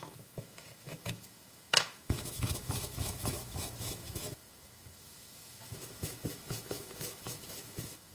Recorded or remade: remade